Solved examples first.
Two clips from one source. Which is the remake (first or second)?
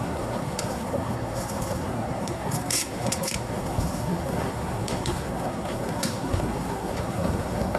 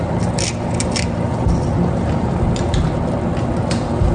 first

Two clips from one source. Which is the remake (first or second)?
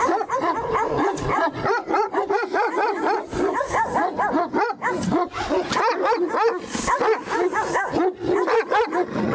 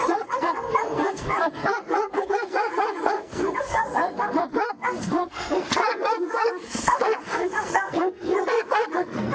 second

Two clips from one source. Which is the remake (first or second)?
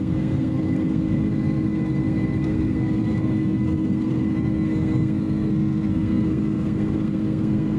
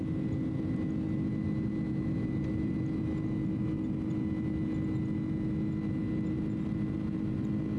first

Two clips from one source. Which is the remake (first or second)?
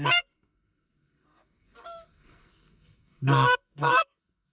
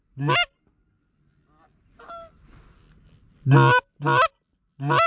first